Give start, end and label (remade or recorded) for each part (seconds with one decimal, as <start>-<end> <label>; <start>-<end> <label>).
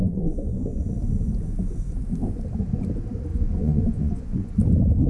0.0-0.8 remade; 0.8-3.3 recorded; 3.3-4.5 remade; 4.5-5.1 recorded